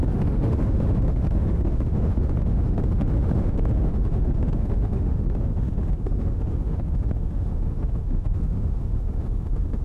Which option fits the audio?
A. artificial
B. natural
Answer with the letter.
A